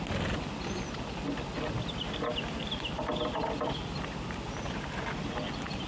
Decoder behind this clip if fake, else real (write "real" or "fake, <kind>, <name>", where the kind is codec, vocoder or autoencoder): real